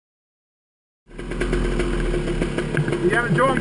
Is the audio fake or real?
real